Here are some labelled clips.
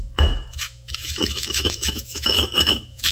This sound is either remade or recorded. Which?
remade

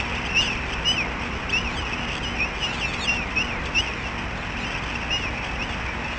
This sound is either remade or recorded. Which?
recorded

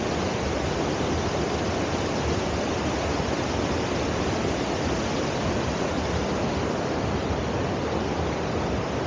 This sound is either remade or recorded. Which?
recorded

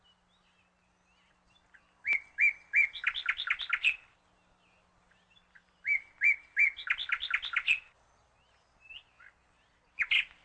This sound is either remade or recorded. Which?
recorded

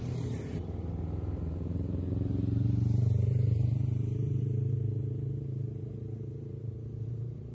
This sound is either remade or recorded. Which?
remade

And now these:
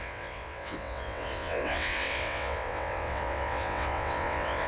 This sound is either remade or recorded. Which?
remade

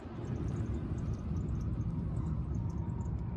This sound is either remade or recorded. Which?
recorded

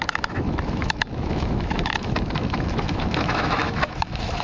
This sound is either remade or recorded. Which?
remade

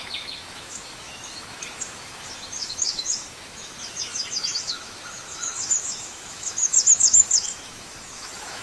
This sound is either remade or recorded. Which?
remade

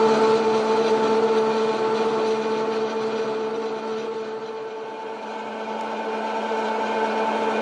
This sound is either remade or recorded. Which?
recorded